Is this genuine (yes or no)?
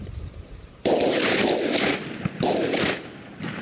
yes